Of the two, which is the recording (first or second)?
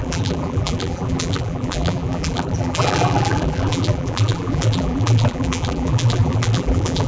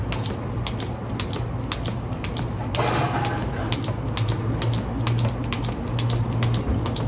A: second